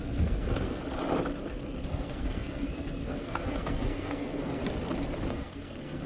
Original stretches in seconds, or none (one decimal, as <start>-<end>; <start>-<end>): 0.8-1.4; 4.6-5.3